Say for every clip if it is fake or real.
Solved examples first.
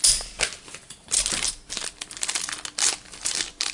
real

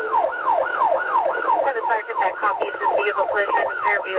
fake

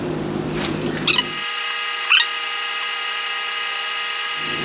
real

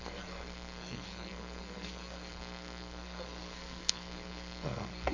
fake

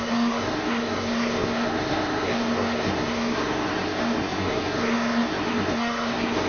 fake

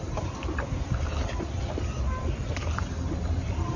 fake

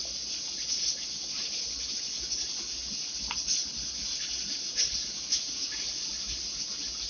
real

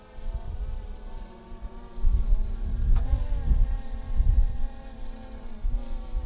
real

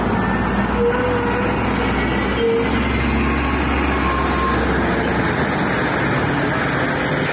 real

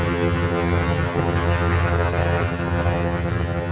fake